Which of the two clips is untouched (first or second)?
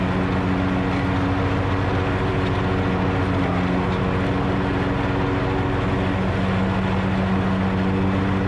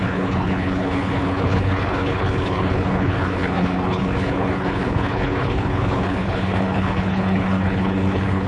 first